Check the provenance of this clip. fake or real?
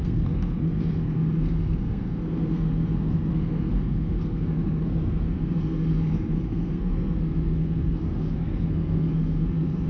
fake